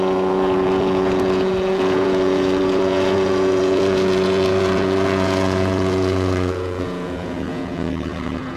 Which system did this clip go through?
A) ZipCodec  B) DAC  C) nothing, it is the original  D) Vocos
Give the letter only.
D